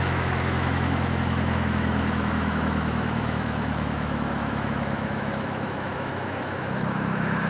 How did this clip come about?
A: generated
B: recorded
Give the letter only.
A